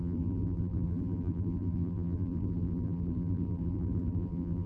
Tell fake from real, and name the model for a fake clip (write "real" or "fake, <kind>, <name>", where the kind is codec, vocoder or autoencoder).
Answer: fake, vocoder, BigVGAN v2